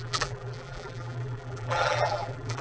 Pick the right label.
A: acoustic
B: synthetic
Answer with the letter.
B